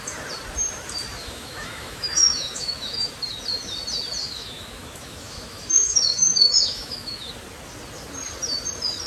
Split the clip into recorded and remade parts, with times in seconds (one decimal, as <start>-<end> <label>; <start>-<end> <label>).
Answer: 0.0-1.2 recorded; 1.2-3.1 remade; 3.1-4.2 recorded; 4.2-7.3 remade; 7.3-9.1 recorded